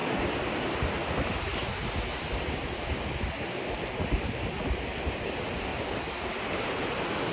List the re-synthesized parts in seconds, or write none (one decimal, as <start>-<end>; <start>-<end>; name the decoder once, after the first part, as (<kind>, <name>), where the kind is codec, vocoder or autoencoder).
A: none